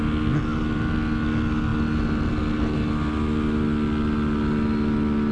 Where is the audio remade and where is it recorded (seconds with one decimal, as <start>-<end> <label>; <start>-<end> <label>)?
0.0-5.3 recorded